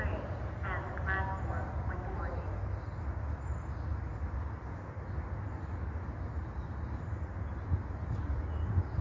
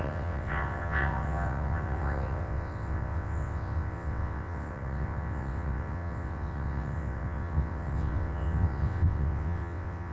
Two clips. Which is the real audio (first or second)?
first